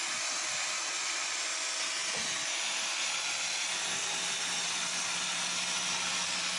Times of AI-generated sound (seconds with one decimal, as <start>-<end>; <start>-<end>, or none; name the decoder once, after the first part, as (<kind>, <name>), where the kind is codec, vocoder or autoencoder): none